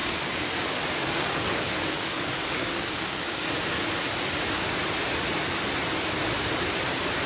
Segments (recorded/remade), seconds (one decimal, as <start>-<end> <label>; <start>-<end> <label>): 0.0-3.5 remade; 3.5-7.3 recorded